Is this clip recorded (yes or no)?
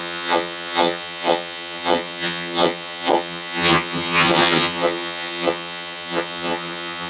no